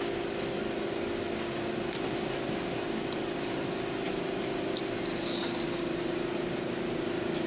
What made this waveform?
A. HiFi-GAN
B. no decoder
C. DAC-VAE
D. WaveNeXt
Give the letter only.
B